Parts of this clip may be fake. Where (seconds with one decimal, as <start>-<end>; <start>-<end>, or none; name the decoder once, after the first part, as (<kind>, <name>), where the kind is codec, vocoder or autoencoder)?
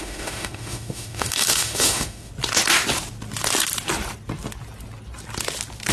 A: 0.0-2.3 (autoencoder, DAC-VAE)